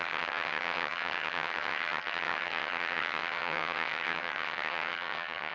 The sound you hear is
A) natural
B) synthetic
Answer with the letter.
B